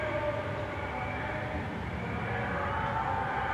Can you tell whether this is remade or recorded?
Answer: recorded